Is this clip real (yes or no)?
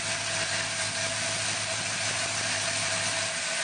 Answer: yes